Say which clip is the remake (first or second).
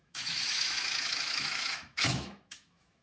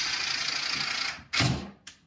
first